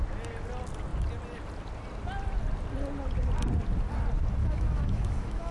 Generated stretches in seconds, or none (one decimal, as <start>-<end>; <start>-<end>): 4.4-5.5